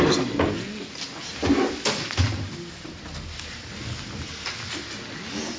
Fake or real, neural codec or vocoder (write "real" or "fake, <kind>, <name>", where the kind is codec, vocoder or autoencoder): real